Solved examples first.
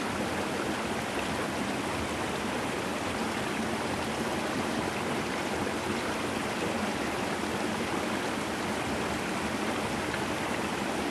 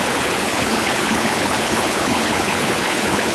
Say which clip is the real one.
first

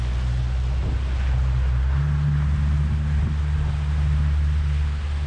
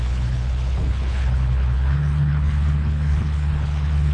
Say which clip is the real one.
first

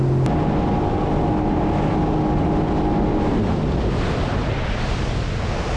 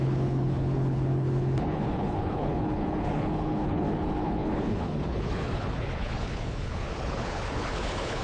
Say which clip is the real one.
first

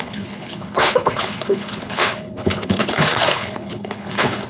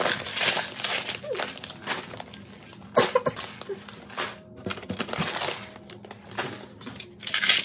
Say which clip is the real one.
second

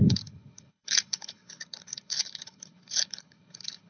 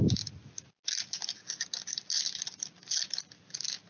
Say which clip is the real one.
second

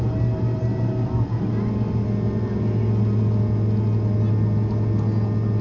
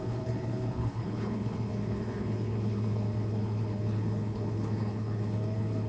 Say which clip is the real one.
first